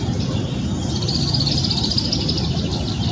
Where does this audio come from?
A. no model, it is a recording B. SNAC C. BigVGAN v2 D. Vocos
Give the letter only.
A